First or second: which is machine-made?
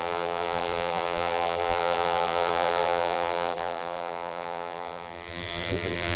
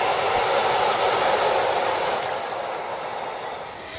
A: first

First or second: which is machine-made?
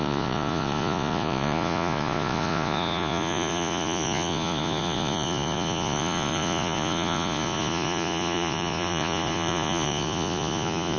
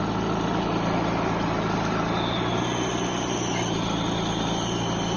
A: first